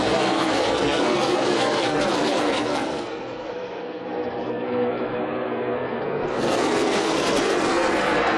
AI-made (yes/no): yes